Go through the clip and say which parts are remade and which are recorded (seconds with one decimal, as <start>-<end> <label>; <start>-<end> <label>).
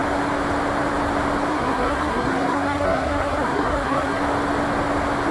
0.0-1.5 recorded; 1.5-4.2 remade; 4.2-5.3 recorded